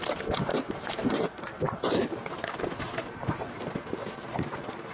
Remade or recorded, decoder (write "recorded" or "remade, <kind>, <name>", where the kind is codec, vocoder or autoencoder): remade, vocoder, BigVGAN v2